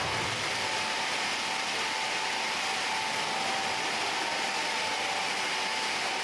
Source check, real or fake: real